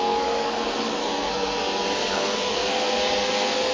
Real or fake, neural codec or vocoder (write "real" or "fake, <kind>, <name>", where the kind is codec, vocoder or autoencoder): fake, codec, SNAC